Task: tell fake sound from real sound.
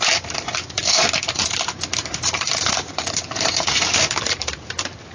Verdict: fake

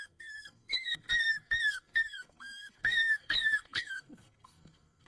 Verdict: fake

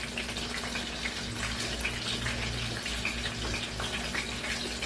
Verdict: real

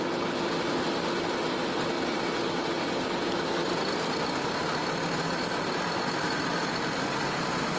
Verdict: real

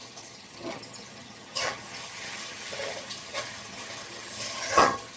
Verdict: fake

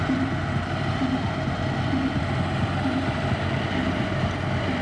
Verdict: real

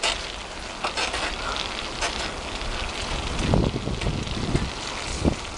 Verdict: real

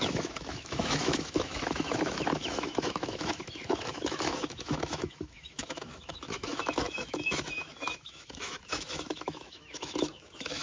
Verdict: fake